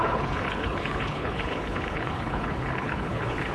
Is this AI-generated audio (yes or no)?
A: yes